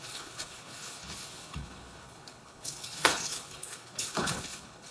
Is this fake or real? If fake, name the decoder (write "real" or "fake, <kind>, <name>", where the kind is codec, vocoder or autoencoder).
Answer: fake, codec, HILCodec